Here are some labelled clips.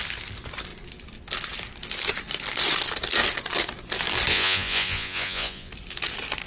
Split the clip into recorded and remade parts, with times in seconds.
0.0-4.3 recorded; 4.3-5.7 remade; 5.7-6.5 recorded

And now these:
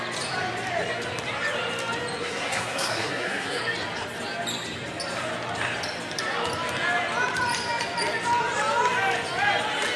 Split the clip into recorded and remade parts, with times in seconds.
0.0-2.2 recorded; 2.2-3.6 remade; 3.6-10.0 recorded

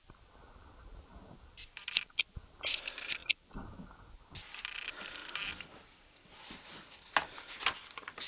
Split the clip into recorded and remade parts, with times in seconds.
0.0-3.2 remade; 3.2-4.3 recorded; 4.3-5.2 remade; 5.2-7.6 recorded; 7.6-8.3 remade